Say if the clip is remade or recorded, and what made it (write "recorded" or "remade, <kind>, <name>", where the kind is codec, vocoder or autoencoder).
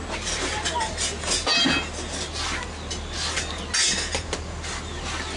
recorded